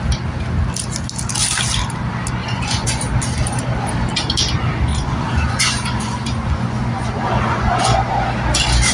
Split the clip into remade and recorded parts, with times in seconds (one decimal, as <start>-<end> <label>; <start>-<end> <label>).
0.0-2.4 recorded; 2.4-3.0 remade; 3.0-4.9 recorded; 4.9-8.1 remade; 8.1-8.9 recorded